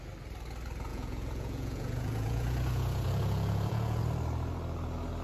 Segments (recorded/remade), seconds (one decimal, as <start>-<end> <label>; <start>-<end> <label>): 0.0-0.9 recorded; 0.9-4.0 remade; 4.0-5.2 recorded